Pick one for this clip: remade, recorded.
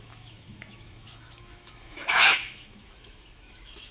remade